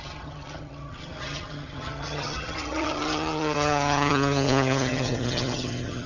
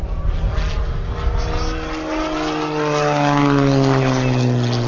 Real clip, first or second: second